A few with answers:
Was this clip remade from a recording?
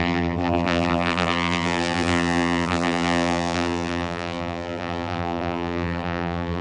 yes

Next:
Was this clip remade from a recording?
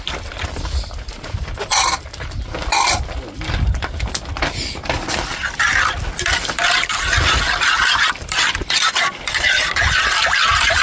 yes